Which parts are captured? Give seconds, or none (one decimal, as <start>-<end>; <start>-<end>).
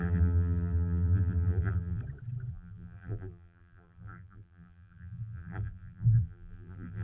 2.0-2.5